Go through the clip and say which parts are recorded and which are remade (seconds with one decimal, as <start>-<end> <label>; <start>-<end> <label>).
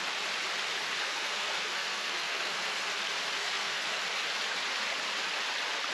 0.0-1.0 recorded; 1.0-2.9 remade; 2.9-3.4 recorded; 3.4-4.0 remade; 4.0-5.9 recorded